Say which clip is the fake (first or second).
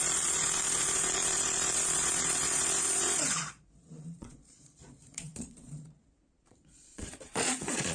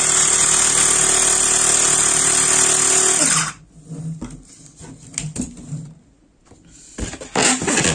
first